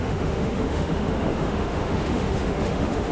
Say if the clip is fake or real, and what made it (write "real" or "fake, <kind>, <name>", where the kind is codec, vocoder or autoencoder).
fake, autoencoder, DAC-VAE